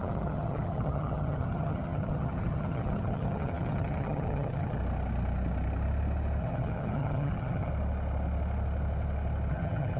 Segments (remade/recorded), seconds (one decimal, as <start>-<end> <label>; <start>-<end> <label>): 0.0-4.8 remade; 4.8-6.4 recorded; 6.4-7.7 remade; 7.7-9.5 recorded; 9.5-10.0 remade